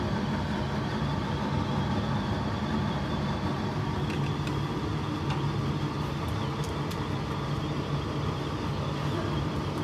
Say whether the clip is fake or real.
real